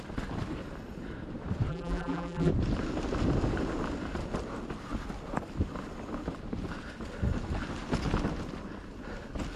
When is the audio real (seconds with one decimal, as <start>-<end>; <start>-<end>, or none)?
0.0-1.7; 2.5-9.6